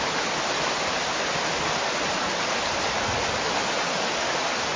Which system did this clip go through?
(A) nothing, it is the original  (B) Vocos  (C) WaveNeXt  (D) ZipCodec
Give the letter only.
A